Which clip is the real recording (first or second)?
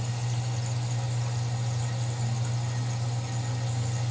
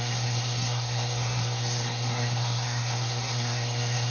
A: first